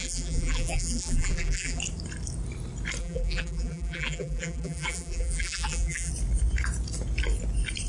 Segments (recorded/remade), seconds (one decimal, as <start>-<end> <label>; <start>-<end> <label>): 0.0-1.8 remade; 1.8-3.0 recorded; 3.0-6.1 remade; 6.1-7.9 recorded